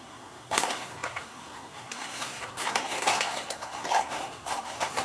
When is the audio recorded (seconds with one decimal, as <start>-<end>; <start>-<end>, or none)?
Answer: none